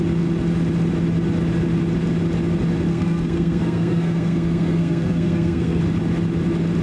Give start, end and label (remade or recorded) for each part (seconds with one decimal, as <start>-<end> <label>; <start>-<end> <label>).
0.0-2.9 recorded; 2.9-5.8 remade; 5.8-6.8 recorded